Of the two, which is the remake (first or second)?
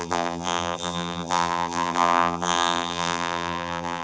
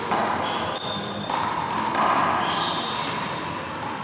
first